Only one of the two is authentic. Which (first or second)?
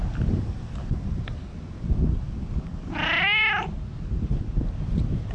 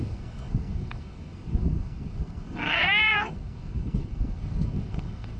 first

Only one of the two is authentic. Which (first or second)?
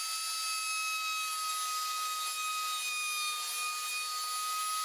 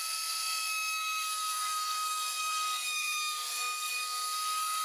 first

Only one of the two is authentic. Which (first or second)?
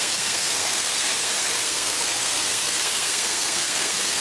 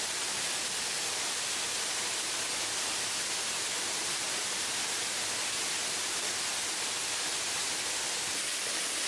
second